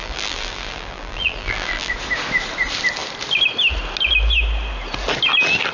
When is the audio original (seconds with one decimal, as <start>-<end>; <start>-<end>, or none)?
1.9-5.7